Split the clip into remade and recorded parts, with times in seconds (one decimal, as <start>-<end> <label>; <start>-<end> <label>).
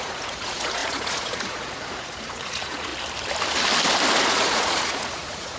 0.0-2.9 remade; 2.9-4.3 recorded; 4.3-5.6 remade